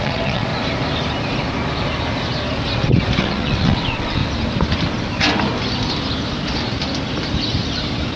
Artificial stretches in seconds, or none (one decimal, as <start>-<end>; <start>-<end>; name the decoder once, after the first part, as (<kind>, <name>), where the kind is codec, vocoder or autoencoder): 0.0-0.5 (vocoder, WaveNeXt); 3.2-4.2